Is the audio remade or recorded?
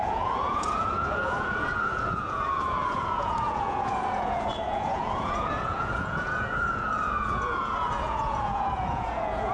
remade